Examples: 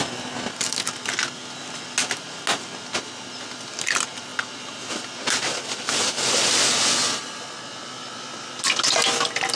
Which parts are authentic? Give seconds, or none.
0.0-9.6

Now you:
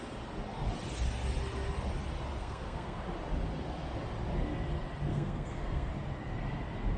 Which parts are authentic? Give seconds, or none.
0.0-2.4; 3.0-5.1; 5.9-7.0

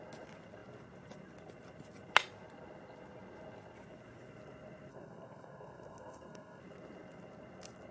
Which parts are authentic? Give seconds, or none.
0.0-4.9; 6.6-7.9

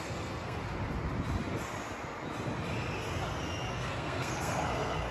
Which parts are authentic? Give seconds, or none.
0.6-3.7

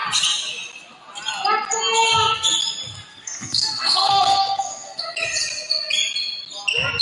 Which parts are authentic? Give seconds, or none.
0.0-3.1; 5.0-7.0

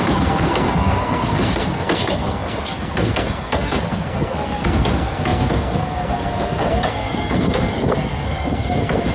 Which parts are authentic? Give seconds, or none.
none

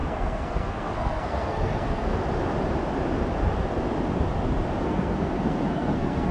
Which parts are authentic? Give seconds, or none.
2.1-4.8